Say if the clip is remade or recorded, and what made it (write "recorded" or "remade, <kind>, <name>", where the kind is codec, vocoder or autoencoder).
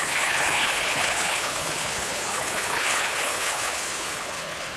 remade, codec, HILCodec